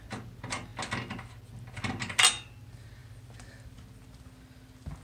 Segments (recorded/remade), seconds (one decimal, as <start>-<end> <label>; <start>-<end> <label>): 0.0-5.0 recorded